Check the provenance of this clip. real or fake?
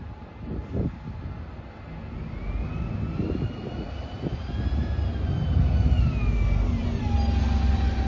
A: real